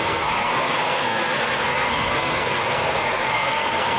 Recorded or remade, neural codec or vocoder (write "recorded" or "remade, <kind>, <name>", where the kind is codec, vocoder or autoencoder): remade, codec, SNAC